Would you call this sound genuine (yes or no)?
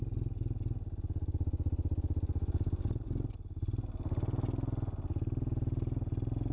yes